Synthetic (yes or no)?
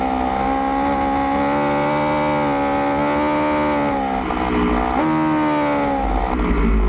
no